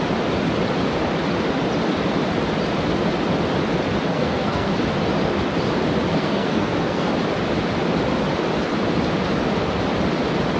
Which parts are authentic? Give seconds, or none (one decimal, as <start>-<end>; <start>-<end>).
0.0-4.1; 4.7-6.1; 7.1-10.6